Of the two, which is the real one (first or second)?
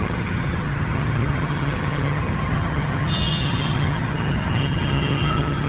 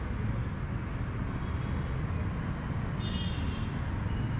second